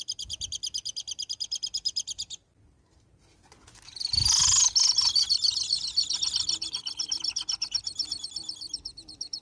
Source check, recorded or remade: recorded